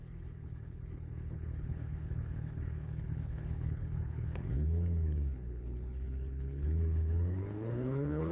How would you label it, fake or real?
fake